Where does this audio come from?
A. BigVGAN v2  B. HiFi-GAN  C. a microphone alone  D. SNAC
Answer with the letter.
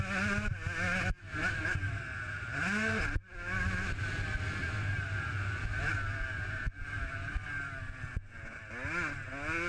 C